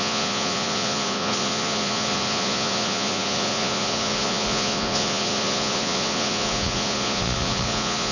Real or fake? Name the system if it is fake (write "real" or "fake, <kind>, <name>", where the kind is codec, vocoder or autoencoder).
fake, vocoder, Vocos